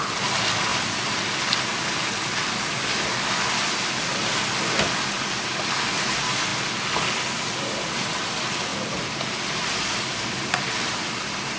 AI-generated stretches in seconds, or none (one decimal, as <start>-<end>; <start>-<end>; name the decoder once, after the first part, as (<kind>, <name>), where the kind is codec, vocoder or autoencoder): 0.7-1.2 (vocoder, BigVGAN v2); 8.7-10.5